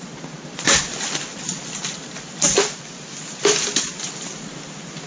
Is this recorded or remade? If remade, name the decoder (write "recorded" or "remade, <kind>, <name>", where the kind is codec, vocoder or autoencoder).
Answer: recorded